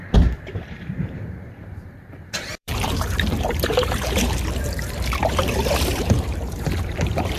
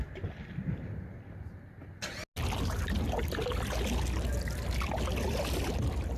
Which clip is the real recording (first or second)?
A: second